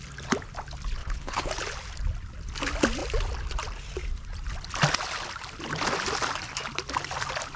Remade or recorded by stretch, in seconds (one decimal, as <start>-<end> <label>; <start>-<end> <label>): 0.0-1.0 recorded; 1.0-1.5 remade; 1.5-7.6 recorded